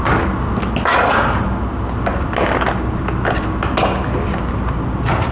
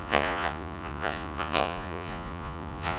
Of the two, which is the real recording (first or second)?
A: first